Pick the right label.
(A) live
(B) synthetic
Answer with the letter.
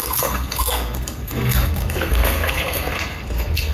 B